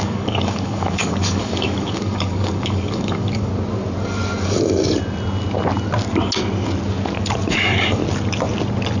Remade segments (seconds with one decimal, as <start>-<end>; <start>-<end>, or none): 0.0-3.5; 7.5-8.0